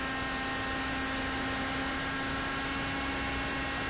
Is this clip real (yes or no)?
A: yes